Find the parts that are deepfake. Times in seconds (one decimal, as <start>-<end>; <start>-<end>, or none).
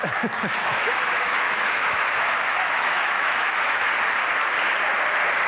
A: 0.7-3.8